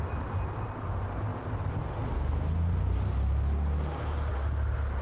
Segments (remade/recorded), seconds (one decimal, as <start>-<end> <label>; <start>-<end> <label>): 0.0-5.0 recorded